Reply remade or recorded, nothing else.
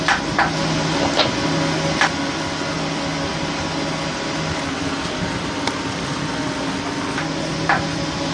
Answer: recorded